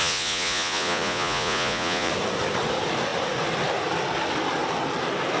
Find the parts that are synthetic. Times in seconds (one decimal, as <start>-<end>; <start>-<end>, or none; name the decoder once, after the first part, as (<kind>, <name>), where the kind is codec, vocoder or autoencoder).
0.0-2.1 (vocoder, Vocos)